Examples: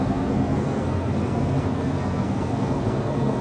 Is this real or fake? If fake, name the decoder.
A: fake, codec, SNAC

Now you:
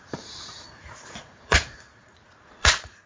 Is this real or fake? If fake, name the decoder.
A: fake, vocoder, Vocos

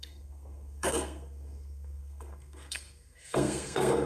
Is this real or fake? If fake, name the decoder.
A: fake, codec, SNAC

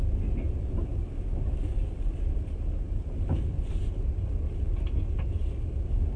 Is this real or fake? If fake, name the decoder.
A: real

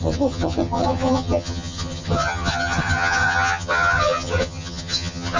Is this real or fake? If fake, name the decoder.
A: fake, vocoder, HiFi-GAN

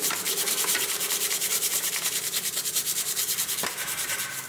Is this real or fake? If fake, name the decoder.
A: fake, vocoder, BigVGAN v2